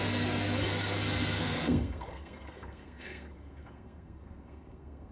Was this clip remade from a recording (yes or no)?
yes